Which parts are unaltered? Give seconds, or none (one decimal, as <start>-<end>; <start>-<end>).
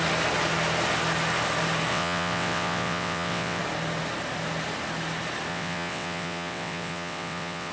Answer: 0.0-1.9; 3.6-5.5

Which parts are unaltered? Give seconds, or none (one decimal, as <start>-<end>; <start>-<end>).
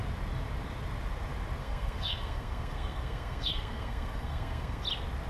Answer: 0.0-1.6; 4.8-5.3